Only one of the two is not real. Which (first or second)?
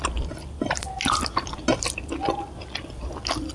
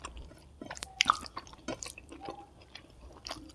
second